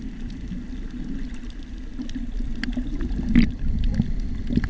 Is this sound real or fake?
real